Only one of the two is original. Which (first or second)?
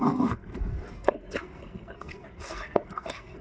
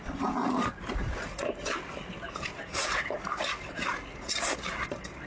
second